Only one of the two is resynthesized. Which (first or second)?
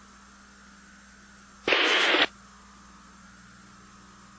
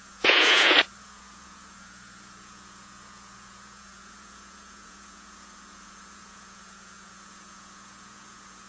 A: second